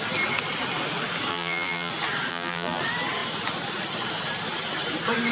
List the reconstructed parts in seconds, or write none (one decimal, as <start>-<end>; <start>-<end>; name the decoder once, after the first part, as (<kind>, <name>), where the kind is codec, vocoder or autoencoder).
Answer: 1.3-1.9 (vocoder, BigVGAN v2); 2.3-2.8